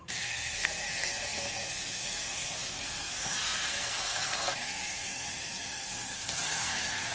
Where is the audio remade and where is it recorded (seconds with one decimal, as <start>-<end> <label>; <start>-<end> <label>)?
0.0-7.1 remade